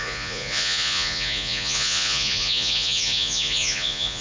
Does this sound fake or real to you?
fake